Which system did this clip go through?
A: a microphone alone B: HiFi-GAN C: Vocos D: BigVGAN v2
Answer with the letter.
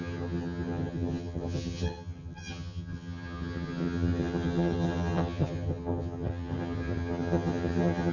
B